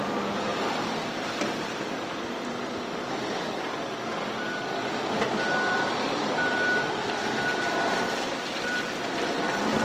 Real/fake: real